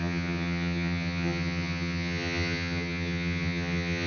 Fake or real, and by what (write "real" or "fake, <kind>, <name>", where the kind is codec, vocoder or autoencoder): fake, vocoder, HiFi-GAN